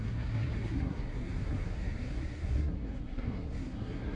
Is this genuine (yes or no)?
no